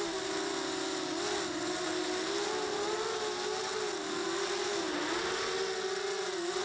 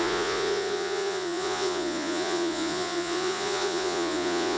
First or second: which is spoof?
second